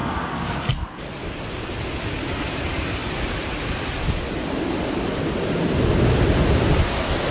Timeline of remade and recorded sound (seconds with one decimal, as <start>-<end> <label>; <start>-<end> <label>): 0.0-0.7 remade; 0.7-7.3 recorded